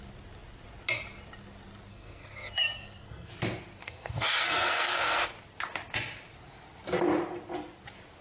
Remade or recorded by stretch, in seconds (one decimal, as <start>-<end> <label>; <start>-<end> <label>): 0.0-1.9 recorded; 1.9-3.3 remade; 3.3-3.8 recorded; 3.8-5.3 remade; 5.3-8.2 recorded